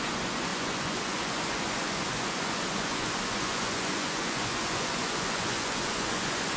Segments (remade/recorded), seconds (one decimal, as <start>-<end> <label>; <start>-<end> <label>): 0.0-6.6 remade